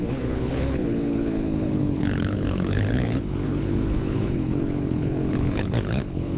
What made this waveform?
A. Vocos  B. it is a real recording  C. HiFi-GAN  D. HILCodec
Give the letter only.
D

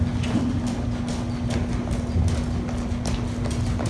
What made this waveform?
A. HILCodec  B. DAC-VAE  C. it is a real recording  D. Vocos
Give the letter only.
C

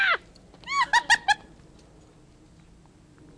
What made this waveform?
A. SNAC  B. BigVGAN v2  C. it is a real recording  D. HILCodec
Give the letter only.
C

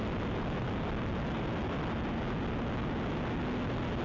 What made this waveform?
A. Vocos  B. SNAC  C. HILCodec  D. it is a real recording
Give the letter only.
D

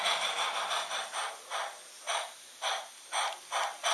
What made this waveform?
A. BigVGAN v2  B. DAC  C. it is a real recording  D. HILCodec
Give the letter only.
C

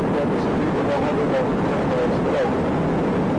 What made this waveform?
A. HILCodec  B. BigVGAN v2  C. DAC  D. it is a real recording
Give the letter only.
D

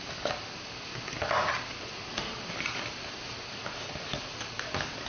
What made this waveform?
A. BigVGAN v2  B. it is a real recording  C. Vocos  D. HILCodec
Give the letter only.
B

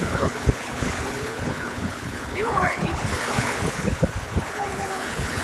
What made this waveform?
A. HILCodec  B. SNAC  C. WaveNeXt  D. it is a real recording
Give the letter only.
A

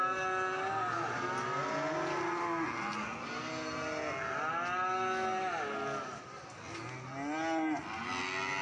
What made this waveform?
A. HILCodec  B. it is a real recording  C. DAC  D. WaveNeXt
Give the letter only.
B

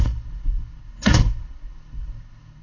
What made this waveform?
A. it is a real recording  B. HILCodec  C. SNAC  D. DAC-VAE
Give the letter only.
B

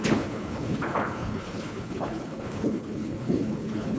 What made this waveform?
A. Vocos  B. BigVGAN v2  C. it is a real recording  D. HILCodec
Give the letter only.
D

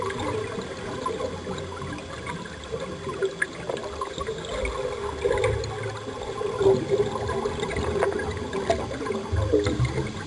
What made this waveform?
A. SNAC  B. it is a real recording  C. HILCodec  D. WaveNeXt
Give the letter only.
B